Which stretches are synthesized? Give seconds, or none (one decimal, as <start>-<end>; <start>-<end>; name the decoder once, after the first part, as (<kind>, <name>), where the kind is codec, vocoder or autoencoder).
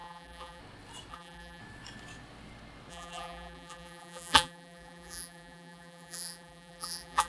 0.0-0.6 (vocoder, BigVGAN v2); 1.1-1.6; 2.9-7.3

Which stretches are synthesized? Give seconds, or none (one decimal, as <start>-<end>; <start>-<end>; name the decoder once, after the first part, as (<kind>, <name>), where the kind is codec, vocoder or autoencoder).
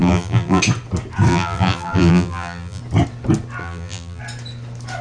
0.0-0.6 (vocoder, BigVGAN v2); 1.3-2.8; 3.6-4.2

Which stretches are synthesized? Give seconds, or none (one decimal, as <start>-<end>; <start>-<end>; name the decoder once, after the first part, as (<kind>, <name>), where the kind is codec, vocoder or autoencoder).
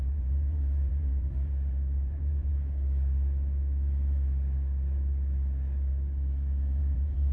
0.0-2.5 (vocoder, BigVGAN v2); 6.8-7.3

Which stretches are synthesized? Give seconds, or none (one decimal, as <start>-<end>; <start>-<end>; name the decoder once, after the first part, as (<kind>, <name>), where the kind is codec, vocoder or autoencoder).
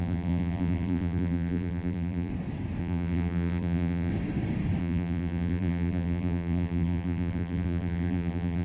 0.0-2.3 (vocoder, BigVGAN v2); 2.8-4.1; 4.8-8.6